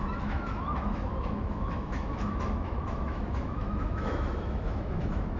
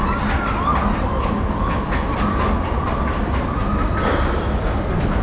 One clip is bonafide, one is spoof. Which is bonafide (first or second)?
second